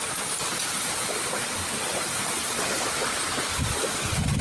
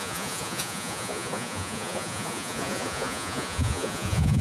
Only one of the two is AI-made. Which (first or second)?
second